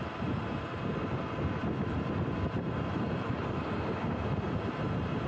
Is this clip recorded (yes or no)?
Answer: no